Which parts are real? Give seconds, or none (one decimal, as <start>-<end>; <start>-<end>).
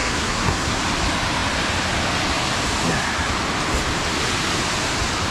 0.8-5.3